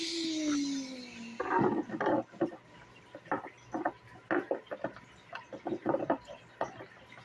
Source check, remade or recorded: recorded